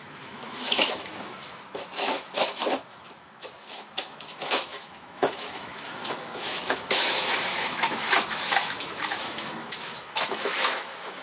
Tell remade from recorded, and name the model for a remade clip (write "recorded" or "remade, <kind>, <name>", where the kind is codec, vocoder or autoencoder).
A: remade, autoencoder, DAC-VAE